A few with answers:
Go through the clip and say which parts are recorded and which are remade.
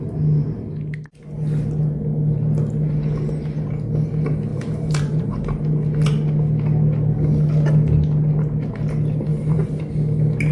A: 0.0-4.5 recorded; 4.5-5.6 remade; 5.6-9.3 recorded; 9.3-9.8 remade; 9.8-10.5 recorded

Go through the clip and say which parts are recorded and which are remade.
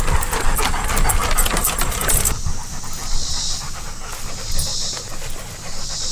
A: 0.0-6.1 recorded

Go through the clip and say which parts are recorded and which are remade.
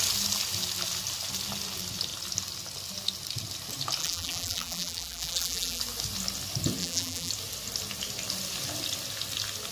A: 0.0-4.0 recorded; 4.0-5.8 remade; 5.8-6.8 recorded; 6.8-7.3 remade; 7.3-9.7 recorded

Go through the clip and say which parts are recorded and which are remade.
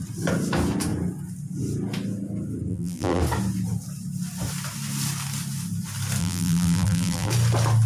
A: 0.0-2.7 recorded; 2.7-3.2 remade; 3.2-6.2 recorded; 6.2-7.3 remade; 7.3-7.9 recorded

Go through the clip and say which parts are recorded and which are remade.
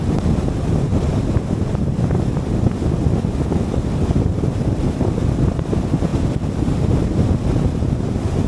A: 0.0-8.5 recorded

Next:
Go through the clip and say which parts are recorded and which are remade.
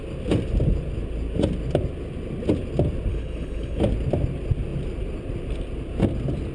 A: 0.0-3.1 recorded; 3.1-3.8 remade; 3.8-6.5 recorded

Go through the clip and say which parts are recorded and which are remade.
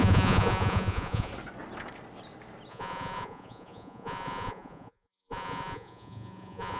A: 0.0-1.3 remade; 1.3-2.7 recorded; 2.7-6.8 remade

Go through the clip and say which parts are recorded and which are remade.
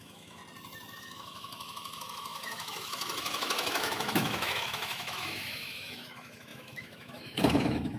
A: 0.0-0.4 remade; 0.4-1.0 recorded; 1.0-8.0 remade